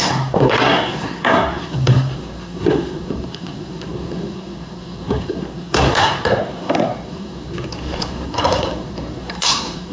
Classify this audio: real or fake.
fake